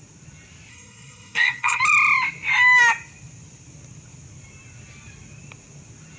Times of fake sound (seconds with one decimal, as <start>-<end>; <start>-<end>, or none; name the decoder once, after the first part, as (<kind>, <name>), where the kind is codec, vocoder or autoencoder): 0.7-1.8 (codec, SNAC)